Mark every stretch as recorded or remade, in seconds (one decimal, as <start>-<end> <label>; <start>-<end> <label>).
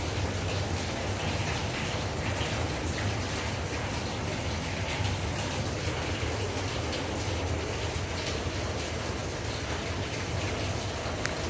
0.0-9.2 recorded; 9.2-10.5 remade; 10.5-11.5 recorded